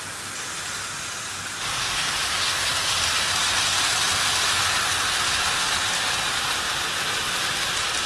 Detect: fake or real real